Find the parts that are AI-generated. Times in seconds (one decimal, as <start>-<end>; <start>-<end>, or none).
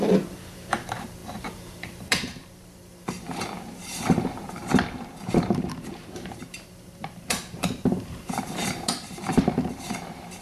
0.0-4.6; 5.3-10.4